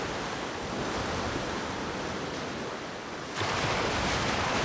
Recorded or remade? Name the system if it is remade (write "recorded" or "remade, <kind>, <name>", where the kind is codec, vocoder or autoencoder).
recorded